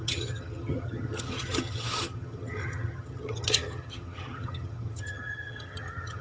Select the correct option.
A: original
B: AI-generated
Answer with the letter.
B